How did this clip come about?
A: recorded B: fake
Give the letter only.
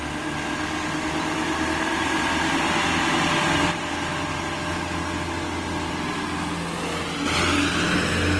A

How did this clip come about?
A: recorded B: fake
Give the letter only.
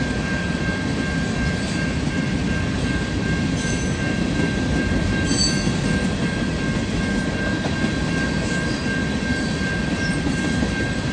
B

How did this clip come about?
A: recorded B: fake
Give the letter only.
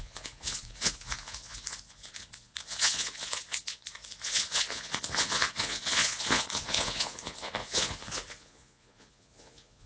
B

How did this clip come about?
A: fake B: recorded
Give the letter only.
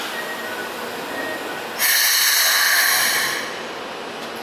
B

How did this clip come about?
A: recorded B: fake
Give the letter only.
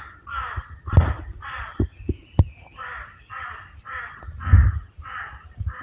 A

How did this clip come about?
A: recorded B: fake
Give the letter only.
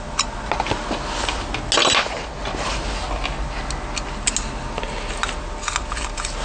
A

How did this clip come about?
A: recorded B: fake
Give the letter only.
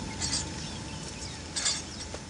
A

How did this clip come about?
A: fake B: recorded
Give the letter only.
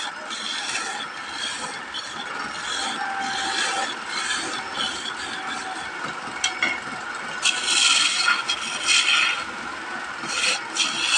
B